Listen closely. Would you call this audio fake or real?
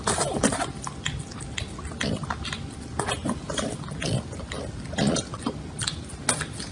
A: real